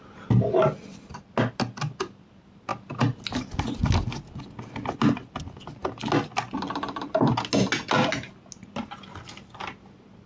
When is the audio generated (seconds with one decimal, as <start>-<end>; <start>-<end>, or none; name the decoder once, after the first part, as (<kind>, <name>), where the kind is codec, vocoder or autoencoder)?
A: none